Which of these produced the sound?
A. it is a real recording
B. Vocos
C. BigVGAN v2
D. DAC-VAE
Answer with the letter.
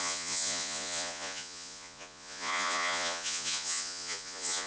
B